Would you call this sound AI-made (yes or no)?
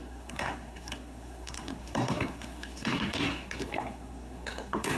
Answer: yes